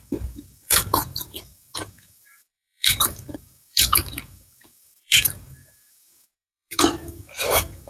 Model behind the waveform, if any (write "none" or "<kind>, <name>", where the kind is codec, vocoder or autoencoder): codec, DAC